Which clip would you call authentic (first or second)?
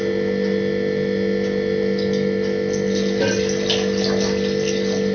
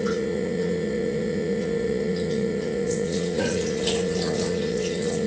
first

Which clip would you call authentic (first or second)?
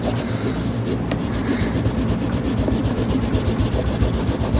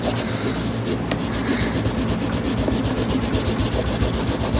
second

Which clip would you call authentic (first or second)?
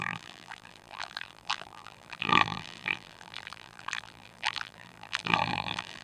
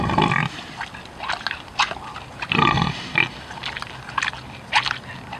second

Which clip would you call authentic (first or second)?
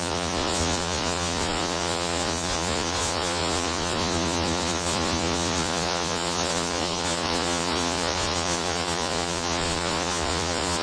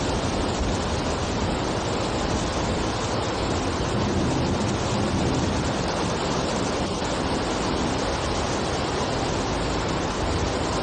second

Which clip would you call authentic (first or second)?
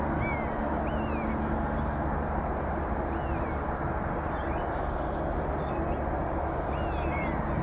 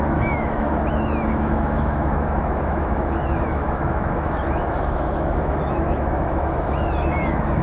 first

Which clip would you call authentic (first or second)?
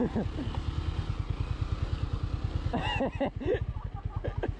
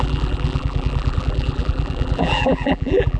first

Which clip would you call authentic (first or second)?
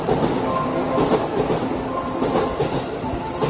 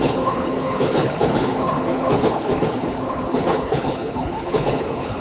first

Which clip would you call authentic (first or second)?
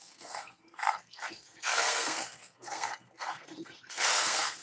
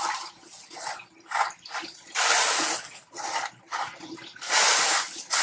second